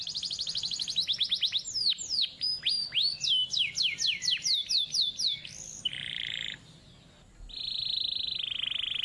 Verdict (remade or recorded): recorded